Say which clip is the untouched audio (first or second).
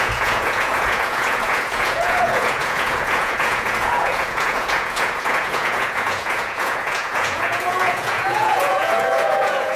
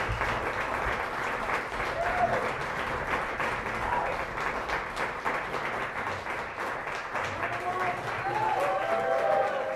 second